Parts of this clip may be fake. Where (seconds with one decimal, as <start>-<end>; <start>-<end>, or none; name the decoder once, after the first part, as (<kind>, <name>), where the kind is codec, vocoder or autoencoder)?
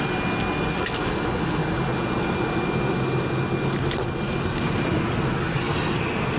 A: none